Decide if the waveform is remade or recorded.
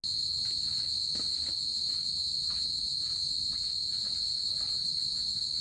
recorded